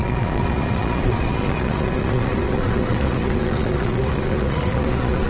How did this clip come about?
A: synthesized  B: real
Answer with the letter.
A